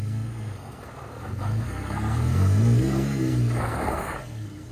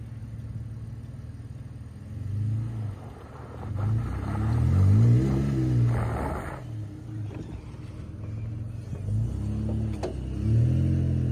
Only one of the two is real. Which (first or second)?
second